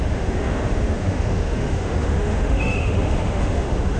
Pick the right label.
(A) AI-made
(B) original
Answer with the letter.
A